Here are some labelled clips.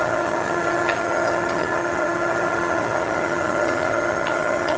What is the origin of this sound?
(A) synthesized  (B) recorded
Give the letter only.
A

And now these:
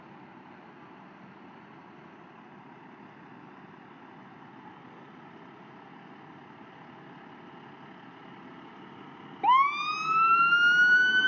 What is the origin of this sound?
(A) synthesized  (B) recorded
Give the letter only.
B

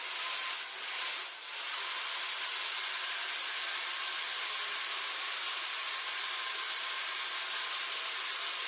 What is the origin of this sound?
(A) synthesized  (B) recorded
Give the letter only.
B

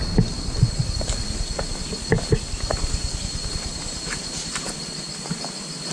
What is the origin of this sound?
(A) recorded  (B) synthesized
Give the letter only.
A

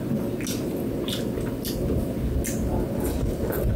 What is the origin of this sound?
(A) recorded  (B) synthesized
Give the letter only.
A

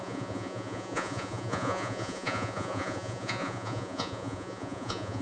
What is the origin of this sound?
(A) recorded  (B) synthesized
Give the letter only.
B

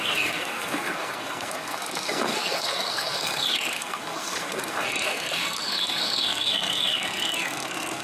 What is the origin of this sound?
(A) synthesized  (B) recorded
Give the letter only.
A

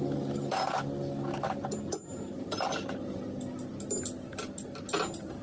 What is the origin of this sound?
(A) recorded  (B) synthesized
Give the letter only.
A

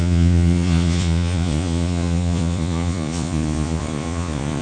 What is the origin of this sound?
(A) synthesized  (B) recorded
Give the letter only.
A